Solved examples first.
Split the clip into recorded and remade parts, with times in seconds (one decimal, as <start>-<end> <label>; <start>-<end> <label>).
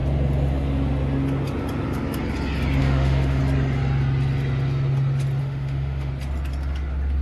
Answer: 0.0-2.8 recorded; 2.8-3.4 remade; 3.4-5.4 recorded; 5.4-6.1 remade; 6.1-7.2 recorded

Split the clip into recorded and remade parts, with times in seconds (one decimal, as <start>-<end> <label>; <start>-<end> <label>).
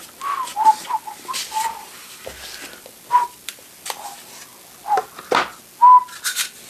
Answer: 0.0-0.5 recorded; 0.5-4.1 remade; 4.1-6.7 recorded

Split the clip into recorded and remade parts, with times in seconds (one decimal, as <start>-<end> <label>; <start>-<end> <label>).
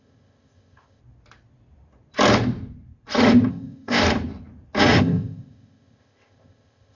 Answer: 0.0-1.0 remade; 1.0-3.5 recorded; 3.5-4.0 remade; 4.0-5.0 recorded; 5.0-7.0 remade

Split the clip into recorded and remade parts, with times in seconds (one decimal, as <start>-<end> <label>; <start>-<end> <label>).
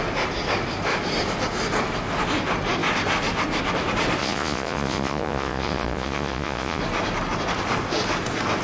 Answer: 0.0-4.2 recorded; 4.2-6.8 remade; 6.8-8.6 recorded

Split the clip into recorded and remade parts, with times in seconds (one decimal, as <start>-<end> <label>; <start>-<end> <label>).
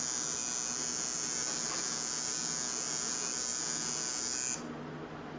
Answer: 0.0-5.4 recorded